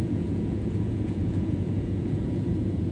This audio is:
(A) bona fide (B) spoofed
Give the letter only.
B